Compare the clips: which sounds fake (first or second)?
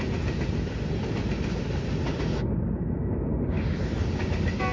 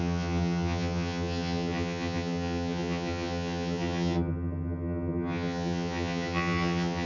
second